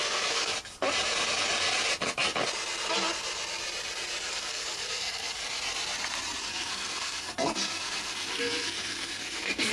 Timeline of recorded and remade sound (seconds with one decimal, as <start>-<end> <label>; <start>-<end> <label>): 0.0-0.5 remade; 0.5-4.3 recorded; 4.3-5.4 remade; 5.4-6.4 recorded; 6.4-9.7 remade